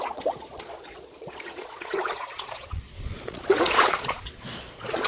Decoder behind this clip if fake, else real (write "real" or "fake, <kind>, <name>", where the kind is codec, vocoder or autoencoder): fake, vocoder, Vocos